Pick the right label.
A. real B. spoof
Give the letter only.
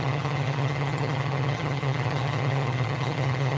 B